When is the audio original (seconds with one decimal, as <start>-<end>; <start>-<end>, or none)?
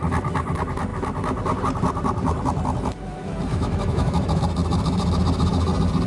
0.0-3.5; 4.4-6.1